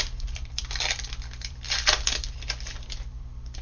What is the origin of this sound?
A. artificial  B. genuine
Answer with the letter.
A